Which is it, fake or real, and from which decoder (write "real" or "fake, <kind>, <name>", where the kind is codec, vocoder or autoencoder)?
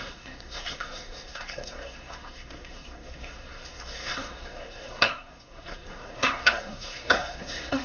fake, codec, SNAC